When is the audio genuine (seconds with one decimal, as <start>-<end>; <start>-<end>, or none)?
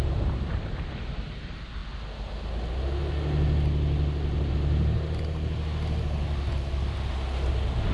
0.0-7.9